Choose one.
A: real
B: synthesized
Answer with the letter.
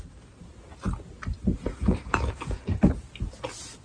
A